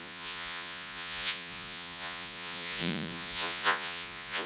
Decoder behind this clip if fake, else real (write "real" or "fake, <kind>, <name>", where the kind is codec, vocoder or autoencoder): fake, vocoder, Vocos